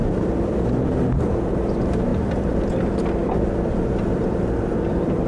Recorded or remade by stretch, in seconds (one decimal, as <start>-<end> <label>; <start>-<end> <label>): 0.0-1.3 remade; 1.3-3.2 recorded; 3.2-5.3 remade

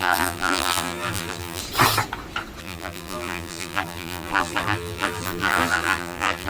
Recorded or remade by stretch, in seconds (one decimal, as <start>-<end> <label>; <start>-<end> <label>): 0.0-1.6 remade; 1.6-2.6 recorded; 2.6-6.5 remade

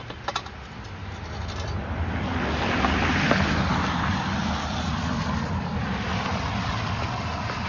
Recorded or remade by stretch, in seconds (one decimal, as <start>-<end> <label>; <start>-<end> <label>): 0.0-4.9 recorded; 4.9-6.7 remade; 6.7-7.7 recorded

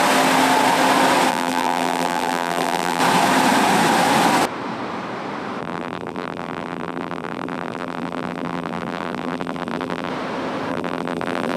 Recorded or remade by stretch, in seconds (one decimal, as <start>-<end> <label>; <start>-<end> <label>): 0.0-1.3 recorded; 1.3-3.0 remade; 3.0-5.6 recorded; 5.6-10.1 remade; 10.1-10.7 recorded; 10.7-11.6 remade

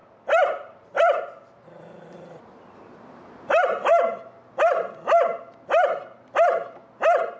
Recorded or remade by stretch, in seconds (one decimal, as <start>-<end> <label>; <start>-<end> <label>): 0.0-2.4 remade; 2.4-7.4 recorded